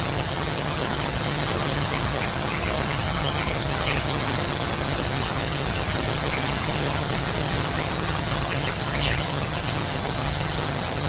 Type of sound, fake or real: fake